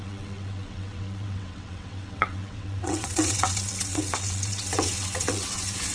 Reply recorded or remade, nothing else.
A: remade